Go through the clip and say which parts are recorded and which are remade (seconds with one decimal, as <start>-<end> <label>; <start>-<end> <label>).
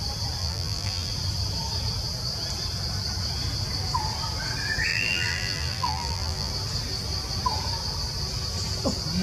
0.0-0.4 recorded; 0.4-1.1 remade; 1.1-4.9 recorded; 4.9-6.5 remade; 6.5-9.2 recorded